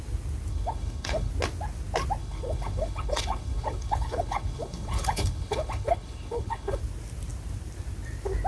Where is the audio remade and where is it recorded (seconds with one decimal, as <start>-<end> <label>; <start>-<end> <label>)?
0.0-0.5 recorded; 0.5-1.3 remade; 1.3-2.2 recorded; 2.2-6.8 remade; 6.8-8.5 recorded